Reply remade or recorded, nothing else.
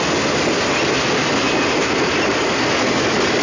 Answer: recorded